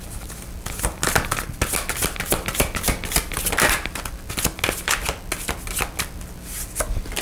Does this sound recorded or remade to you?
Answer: recorded